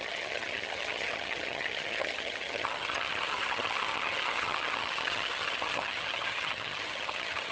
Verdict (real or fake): fake